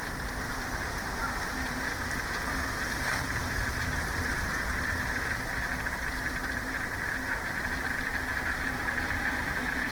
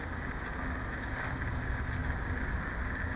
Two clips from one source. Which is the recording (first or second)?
second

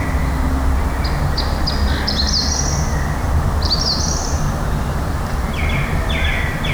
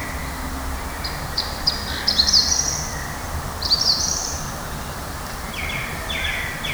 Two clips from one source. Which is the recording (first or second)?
first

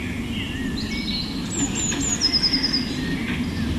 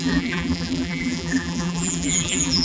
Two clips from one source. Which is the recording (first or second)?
first